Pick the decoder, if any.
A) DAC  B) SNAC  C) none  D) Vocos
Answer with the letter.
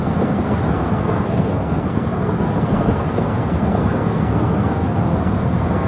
B